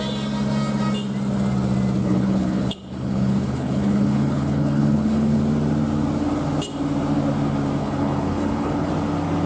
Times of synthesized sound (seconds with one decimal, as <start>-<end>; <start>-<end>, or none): 2.0-5.4; 7.8-8.9